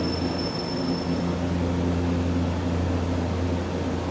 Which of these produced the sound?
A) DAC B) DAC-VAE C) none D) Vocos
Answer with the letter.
C